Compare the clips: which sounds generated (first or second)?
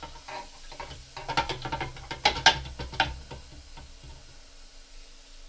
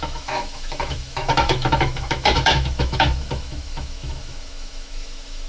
second